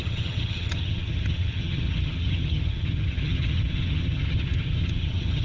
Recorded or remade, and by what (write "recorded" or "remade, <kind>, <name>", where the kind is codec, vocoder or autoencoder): remade, vocoder, HiFi-GAN